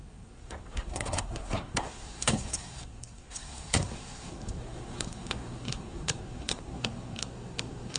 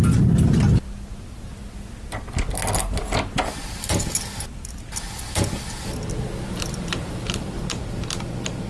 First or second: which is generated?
first